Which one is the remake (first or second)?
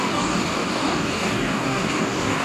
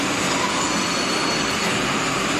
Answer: first